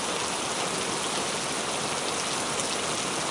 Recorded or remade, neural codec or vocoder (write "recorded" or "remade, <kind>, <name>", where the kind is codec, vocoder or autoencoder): recorded